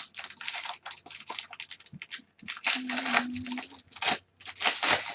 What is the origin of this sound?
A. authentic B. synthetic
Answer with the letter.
A